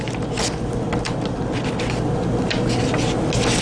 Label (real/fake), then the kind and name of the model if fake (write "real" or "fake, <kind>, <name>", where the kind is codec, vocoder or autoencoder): real